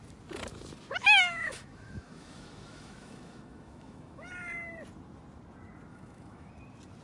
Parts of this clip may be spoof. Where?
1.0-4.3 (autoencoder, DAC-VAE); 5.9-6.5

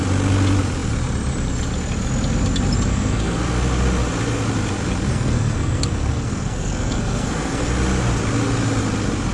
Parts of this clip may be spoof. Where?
2.9-3.4 (codec, SNAC); 5.1-7.7

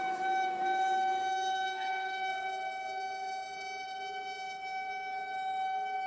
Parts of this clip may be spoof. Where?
0.0-2.3 (autoencoder, DAC-VAE)